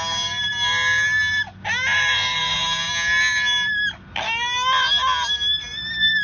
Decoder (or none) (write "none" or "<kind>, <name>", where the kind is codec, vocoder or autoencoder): none